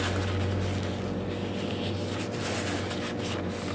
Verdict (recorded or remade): recorded